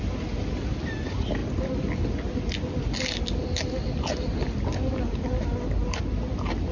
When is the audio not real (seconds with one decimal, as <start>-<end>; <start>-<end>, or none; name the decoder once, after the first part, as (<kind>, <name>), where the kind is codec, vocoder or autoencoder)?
none